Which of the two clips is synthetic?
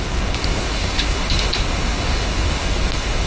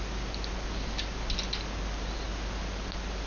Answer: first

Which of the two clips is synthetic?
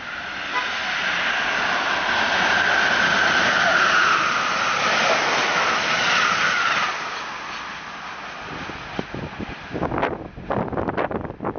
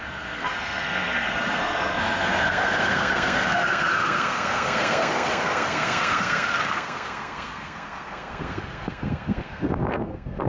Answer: second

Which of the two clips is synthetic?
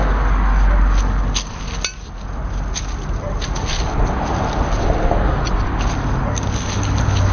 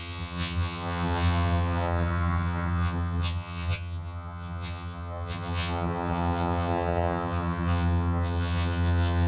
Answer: second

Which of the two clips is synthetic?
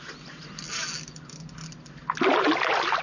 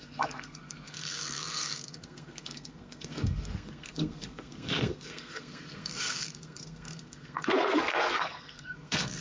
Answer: second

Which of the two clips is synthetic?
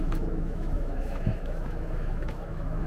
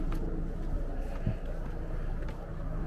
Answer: first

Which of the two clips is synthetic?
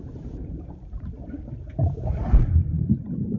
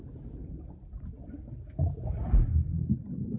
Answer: first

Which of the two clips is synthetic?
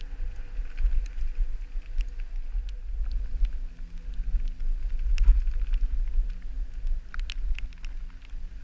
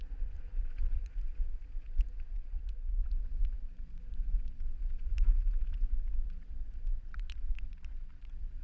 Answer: second